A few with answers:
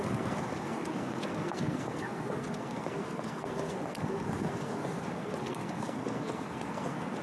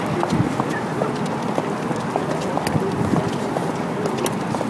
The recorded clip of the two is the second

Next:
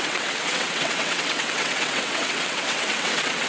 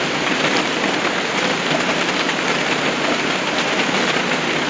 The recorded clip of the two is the second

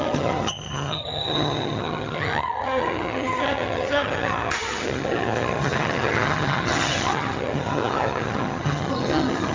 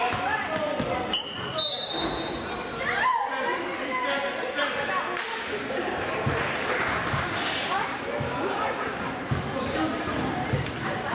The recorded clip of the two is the second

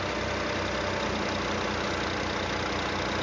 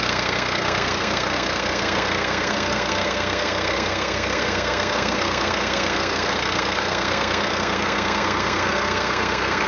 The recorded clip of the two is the first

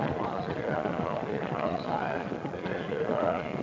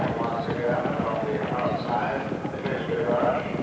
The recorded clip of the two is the second